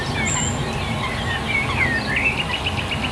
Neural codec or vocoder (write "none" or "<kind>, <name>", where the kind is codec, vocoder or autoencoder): none